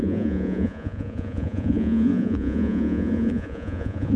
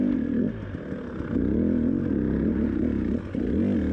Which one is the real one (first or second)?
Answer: second